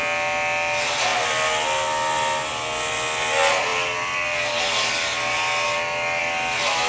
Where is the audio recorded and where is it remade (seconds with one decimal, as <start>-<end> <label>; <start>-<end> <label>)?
0.0-6.9 recorded